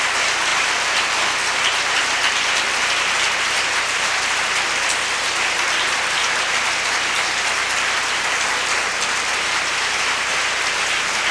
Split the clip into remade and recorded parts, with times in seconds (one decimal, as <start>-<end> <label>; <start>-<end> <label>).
0.0-11.3 recorded